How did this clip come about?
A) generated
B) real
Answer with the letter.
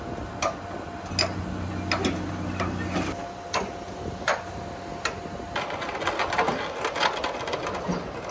B